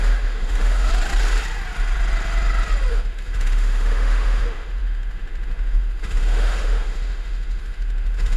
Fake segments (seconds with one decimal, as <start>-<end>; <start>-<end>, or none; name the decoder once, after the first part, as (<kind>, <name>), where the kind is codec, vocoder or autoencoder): 0.0-0.9 (autoencoder, DAC-VAE); 2.9-8.4